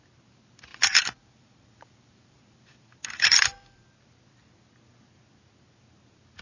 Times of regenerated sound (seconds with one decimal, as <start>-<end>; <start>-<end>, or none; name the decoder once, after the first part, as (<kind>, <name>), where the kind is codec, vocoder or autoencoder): 0.7-3.9 (vocoder, BigVGAN v2)